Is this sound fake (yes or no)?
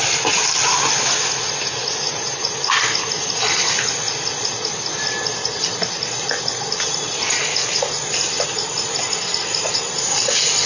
no